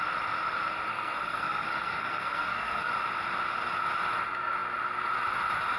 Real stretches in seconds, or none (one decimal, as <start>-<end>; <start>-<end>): 0.0-0.9; 2.9-5.8